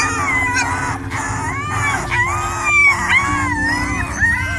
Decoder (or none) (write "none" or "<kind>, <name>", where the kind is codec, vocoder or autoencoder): none